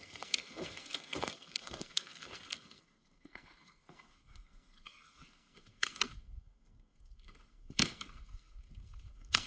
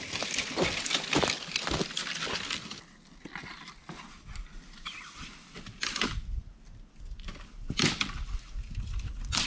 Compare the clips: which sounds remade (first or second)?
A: first